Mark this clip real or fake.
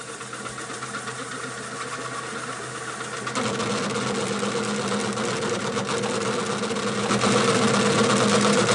real